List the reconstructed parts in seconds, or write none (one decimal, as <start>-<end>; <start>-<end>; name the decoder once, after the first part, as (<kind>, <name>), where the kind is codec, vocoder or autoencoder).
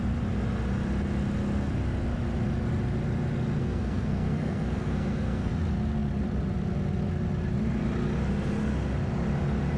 3.6-5.5 (codec, SNAC)